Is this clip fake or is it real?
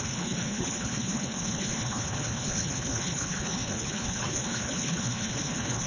fake